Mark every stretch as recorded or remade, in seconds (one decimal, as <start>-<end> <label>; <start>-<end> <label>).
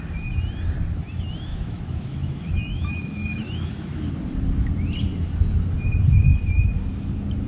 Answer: 0.0-1.5 recorded; 1.5-4.1 remade; 4.1-7.5 recorded